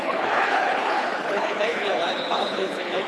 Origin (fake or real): fake